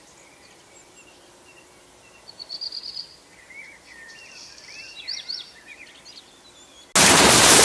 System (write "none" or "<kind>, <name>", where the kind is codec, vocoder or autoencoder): none